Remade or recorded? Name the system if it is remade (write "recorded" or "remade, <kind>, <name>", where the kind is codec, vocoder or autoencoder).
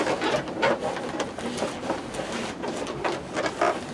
recorded